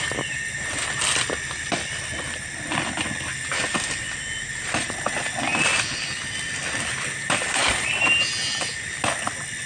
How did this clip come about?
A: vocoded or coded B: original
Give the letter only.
B